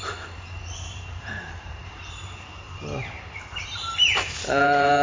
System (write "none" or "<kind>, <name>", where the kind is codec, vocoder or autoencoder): vocoder, BigVGAN v2